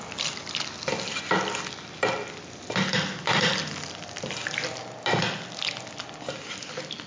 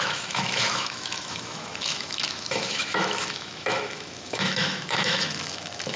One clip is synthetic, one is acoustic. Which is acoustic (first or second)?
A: first